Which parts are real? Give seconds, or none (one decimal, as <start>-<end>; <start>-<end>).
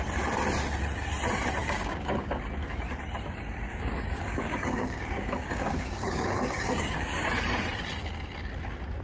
0.0-1.6; 2.1-3.7; 7.3-9.0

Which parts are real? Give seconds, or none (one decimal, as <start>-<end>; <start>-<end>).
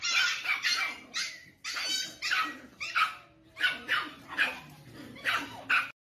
0.0-3.9; 5.2-6.0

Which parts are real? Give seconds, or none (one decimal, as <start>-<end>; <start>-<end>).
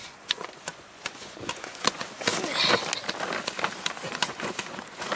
2.3-4.1